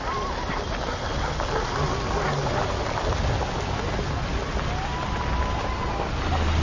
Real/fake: real